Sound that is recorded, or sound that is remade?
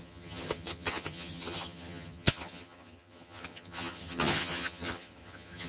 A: remade